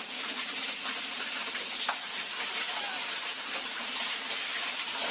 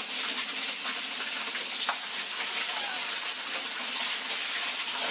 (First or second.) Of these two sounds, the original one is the second